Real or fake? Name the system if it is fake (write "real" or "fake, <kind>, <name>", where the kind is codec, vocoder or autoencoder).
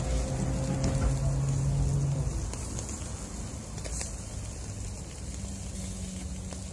real